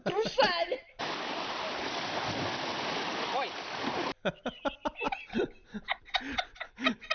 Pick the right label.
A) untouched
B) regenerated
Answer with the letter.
B